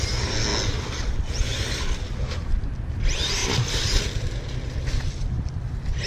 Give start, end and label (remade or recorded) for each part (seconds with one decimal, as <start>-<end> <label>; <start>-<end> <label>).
0.0-6.1 recorded